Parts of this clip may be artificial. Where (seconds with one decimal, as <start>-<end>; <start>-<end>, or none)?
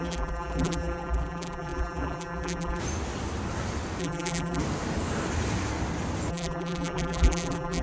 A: 0.0-2.8; 4.0-4.6; 6.3-7.8